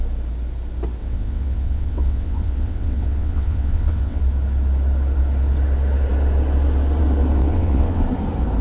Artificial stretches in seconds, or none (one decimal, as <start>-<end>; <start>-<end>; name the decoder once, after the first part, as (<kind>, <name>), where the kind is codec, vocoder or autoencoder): 1.0-4.2 (vocoder, WaveNeXt); 7.4-8.0